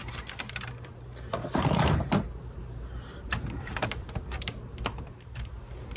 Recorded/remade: remade